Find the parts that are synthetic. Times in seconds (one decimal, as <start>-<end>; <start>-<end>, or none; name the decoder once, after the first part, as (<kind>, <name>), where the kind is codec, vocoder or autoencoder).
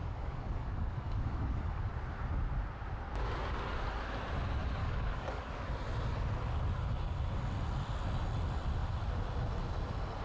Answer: 0.0-1.9 (codec, DAC); 4.8-5.5